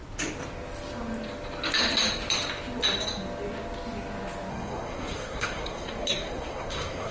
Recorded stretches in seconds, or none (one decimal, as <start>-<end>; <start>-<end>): 0.0-4.5